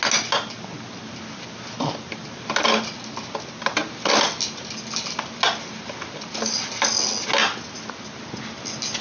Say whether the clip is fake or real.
real